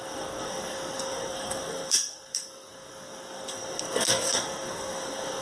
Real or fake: fake